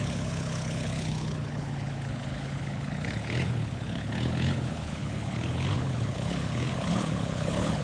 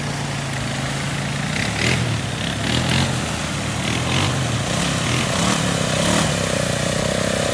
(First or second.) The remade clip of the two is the first